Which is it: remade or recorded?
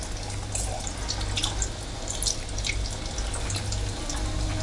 recorded